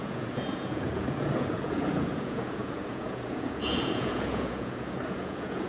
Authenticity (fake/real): fake